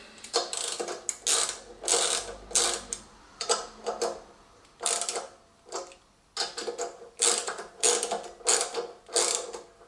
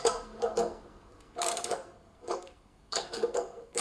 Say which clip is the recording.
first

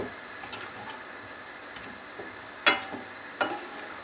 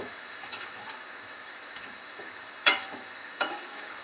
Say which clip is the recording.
first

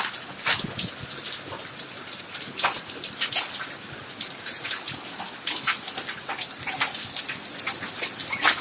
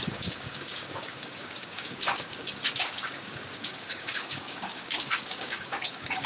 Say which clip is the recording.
first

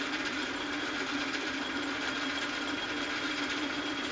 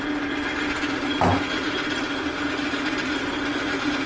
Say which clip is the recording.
second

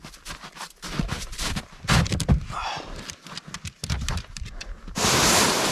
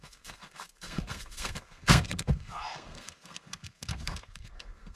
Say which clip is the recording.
first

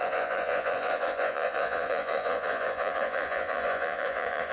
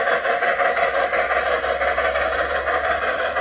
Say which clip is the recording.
second